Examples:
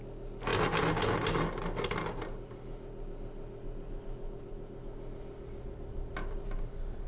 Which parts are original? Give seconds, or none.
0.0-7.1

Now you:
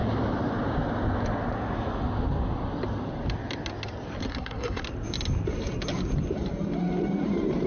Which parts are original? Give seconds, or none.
0.0-4.3; 4.8-7.7

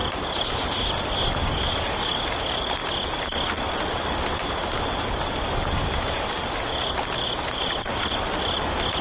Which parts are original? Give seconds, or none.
0.0-9.0

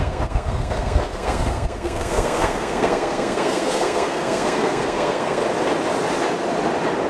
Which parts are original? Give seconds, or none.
5.4-7.1

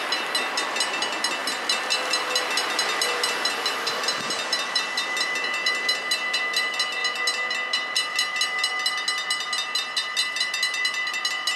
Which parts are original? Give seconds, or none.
0.0-11.6

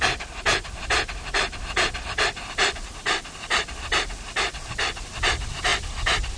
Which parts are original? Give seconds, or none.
0.0-6.4

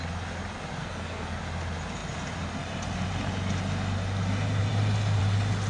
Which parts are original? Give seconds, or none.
0.0-0.8; 1.4-5.7

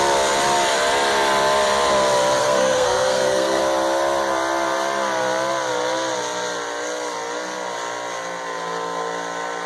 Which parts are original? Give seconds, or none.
0.0-2.4; 3.6-9.7